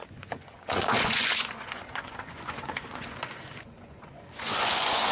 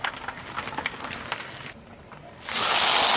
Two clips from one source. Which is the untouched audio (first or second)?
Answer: second